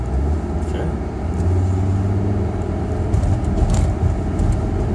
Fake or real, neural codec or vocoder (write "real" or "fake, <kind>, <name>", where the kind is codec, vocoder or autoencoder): real